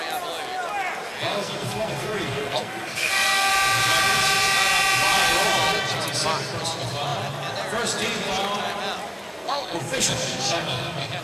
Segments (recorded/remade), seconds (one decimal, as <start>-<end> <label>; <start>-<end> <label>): 0.0-1.3 recorded; 1.3-3.5 remade; 3.5-9.4 recorded; 9.4-11.2 remade